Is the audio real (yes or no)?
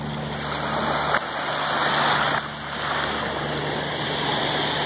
yes